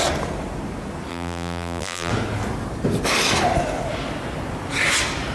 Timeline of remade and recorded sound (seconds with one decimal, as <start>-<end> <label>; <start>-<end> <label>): 0.0-1.1 recorded; 1.1-2.1 remade; 2.1-5.3 recorded